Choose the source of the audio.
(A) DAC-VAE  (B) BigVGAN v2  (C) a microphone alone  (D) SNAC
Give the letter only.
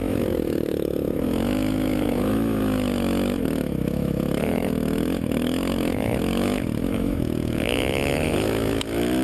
A